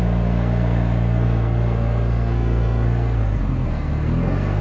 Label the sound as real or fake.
fake